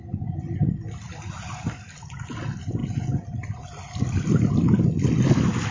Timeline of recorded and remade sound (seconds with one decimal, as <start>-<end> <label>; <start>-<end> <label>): 0.0-5.7 recorded